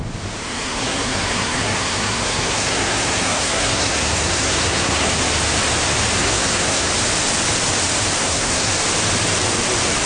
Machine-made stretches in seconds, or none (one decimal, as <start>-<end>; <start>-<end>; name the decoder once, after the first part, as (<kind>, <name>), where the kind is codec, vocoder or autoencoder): 0.4-5.1 (codec, SNAC); 6.2-6.9; 8.2-8.7